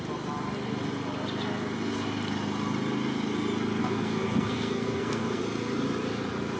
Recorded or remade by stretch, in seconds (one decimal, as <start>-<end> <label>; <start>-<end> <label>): 0.0-3.8 recorded; 3.8-5.4 remade; 5.4-6.6 recorded